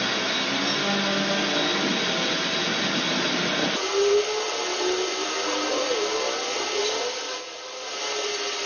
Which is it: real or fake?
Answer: real